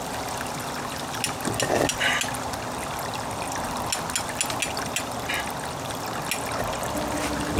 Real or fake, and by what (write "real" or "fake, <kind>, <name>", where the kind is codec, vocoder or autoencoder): real